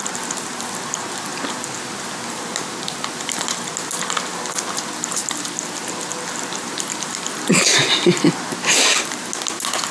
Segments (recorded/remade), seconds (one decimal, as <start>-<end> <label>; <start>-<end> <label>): 0.0-9.9 recorded